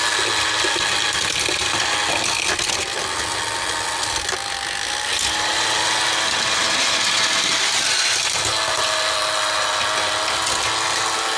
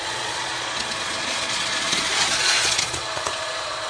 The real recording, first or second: first